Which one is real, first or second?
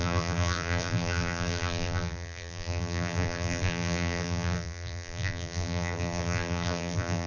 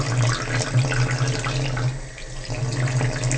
second